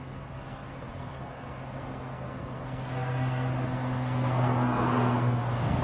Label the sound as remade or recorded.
remade